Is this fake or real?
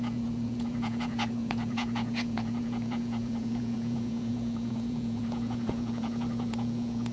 fake